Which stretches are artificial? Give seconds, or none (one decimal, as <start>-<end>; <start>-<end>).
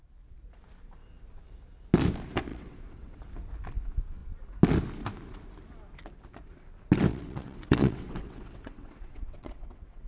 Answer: 2.5-3.2; 7.1-10.1